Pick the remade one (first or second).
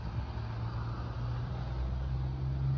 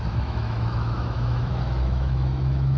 second